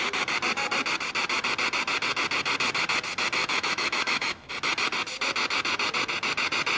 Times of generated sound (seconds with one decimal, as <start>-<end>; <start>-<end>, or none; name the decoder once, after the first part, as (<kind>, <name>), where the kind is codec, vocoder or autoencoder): 3.4-4.5 (autoencoder, DAC-VAE)

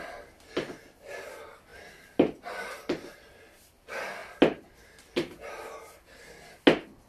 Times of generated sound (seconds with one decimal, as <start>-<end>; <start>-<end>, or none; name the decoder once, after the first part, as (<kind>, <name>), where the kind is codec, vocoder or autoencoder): none

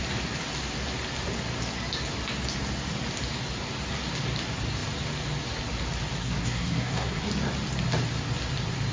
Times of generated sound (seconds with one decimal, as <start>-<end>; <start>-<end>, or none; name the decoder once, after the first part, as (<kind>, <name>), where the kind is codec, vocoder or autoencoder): 6.2-7.3 (codec, SNAC)

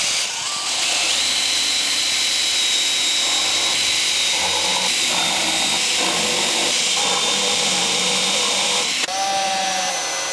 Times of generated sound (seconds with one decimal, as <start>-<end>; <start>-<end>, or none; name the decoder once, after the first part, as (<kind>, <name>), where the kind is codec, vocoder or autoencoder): none

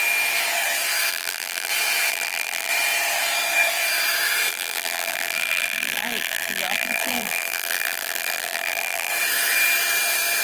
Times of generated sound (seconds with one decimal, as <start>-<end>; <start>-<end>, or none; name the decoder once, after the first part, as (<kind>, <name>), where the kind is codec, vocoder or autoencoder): 1.1-1.7 (vocoder, BigVGAN v2); 2.1-2.7; 4.5-9.1